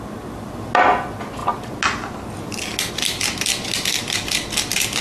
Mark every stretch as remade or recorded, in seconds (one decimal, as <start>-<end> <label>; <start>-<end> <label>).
0.0-5.0 recorded